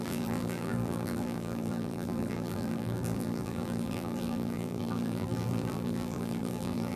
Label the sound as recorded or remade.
remade